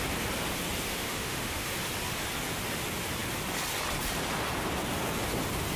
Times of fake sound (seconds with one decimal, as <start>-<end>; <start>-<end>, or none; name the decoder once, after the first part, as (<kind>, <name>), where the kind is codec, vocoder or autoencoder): 0.9-1.7 (autoencoder, DAC-VAE)